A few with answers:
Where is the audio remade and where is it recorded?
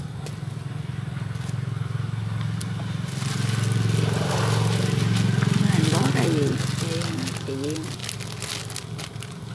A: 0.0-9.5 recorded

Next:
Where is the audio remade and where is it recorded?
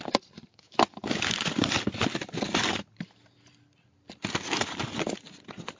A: 0.0-0.5 recorded; 0.5-1.2 remade; 1.2-5.8 recorded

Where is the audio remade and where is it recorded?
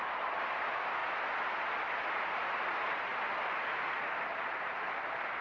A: 0.0-5.4 recorded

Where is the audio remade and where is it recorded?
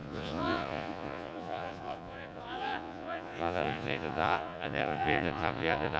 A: 0.0-6.0 remade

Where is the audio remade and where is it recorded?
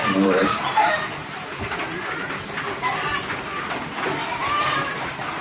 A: 0.0-3.2 remade; 3.2-4.2 recorded; 4.2-5.4 remade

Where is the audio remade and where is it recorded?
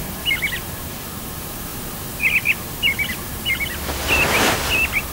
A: 0.0-5.1 recorded